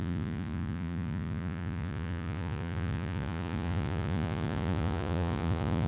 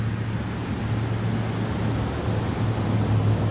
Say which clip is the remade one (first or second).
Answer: first